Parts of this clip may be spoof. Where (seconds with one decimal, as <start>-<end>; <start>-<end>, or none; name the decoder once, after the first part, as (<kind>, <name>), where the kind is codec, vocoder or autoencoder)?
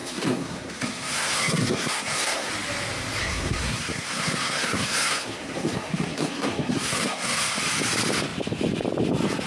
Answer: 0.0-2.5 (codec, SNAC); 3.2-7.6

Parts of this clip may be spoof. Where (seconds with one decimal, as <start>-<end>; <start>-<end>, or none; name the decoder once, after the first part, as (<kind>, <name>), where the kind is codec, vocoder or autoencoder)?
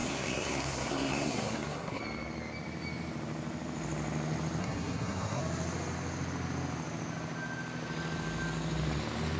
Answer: 0.0-2.0 (codec, SNAC); 4.6-5.4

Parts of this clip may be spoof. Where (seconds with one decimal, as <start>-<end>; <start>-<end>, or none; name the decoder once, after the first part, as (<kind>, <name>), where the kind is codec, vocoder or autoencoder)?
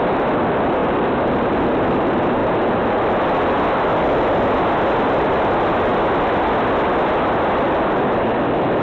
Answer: none